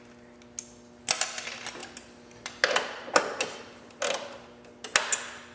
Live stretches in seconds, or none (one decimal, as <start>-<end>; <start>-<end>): 0.0-5.5